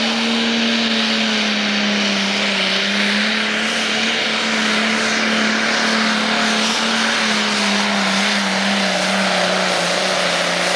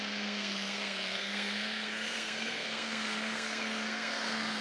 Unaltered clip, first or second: first